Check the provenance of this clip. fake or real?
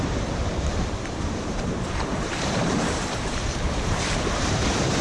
fake